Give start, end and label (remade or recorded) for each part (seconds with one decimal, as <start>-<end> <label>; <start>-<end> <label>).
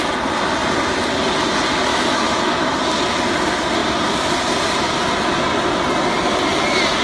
0.0-1.9 recorded; 1.9-2.7 remade; 2.7-7.0 recorded